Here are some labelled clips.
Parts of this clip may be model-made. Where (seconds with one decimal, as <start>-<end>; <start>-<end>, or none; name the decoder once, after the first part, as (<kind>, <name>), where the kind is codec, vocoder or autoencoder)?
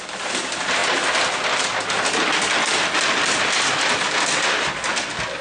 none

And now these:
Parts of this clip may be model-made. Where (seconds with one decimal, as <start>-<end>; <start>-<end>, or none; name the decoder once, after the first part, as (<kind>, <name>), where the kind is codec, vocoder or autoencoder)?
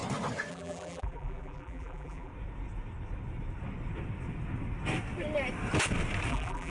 0.5-2.3 (vocoder, BigVGAN v2); 6.3-6.7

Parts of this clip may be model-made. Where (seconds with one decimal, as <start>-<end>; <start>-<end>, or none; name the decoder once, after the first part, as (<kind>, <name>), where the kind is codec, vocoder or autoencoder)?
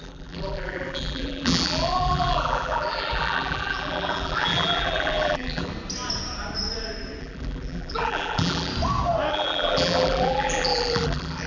0.0-5.7 (vocoder, BigVGAN v2); 7.2-8.7; 9.3-11.5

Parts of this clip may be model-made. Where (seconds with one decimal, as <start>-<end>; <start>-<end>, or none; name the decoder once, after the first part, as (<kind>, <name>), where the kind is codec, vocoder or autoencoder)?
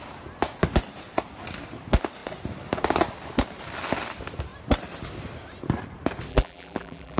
6.3-7.2 (vocoder, BigVGAN v2)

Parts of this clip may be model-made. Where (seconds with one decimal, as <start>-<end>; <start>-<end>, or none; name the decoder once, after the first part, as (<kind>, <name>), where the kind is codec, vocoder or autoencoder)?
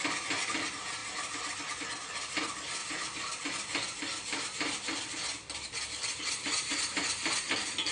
2.8-6.2 (vocoder, BigVGAN v2)